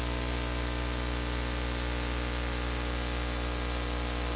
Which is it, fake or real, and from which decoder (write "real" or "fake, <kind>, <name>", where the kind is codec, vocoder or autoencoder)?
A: real